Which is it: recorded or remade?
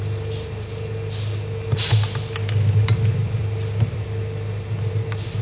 recorded